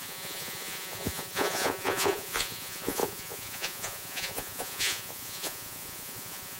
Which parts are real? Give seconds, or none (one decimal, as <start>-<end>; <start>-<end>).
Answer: none